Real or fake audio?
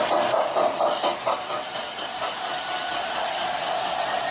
real